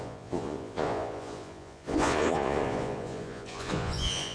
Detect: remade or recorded remade